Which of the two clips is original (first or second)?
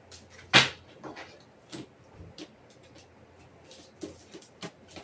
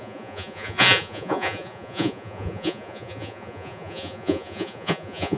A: first